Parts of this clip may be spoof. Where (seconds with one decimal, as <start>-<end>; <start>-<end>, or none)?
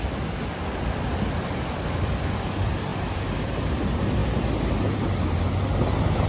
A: none